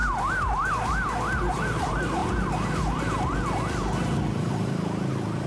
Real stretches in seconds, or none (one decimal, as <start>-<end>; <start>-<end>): 0.7-5.5